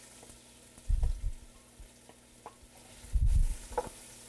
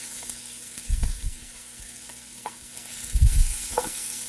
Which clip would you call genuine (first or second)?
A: first